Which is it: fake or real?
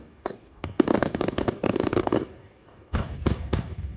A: fake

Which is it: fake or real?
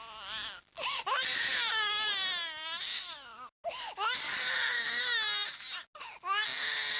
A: real